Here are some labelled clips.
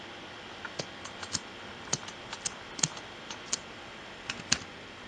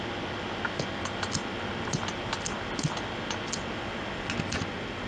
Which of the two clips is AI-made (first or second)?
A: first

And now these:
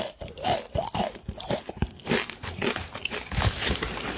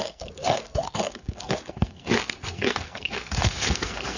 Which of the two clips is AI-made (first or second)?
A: second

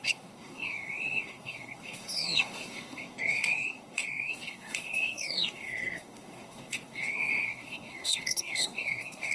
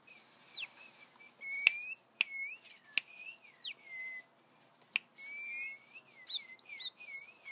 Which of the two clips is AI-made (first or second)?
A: first